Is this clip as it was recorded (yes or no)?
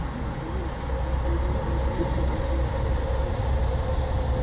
yes